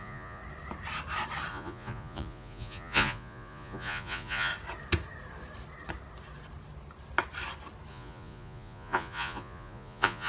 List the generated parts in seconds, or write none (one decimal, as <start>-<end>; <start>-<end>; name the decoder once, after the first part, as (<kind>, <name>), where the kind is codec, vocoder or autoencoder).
0.0-0.4 (vocoder, Vocos); 1.5-4.5; 7.9-10.3